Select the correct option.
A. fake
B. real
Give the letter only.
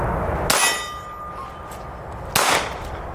B